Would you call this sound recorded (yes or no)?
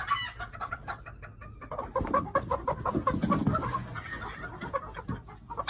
yes